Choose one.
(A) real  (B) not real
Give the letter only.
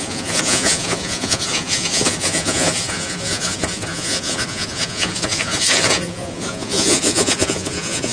B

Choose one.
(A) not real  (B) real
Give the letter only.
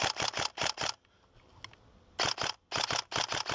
B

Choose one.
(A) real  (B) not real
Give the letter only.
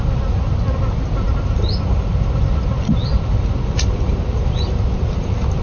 A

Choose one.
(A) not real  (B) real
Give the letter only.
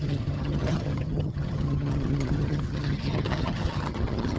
A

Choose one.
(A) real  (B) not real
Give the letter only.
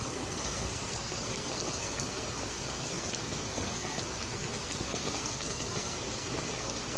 B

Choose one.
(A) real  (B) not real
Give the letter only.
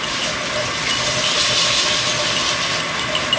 A